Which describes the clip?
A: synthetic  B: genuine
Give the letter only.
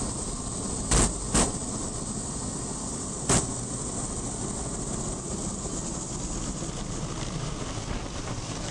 B